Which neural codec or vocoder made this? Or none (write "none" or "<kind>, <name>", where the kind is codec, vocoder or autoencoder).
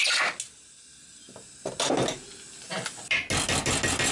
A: none